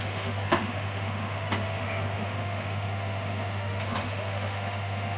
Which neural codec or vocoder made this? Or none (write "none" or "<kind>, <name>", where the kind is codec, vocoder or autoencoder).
autoencoder, DAC-VAE